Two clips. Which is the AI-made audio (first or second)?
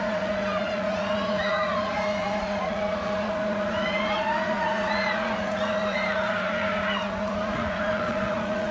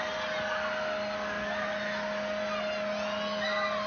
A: first